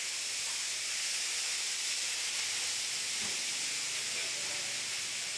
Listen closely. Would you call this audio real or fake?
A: real